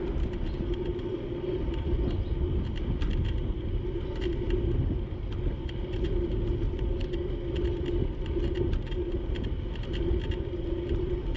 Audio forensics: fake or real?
real